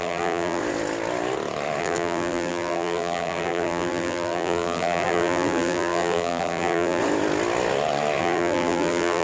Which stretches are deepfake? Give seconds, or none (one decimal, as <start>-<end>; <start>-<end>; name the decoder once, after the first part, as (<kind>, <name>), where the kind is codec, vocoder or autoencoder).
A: 0.0-0.6 (vocoder, BigVGAN v2); 1.8-7.0; 8.2-9.2